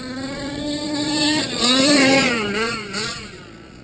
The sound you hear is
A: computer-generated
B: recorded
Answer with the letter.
A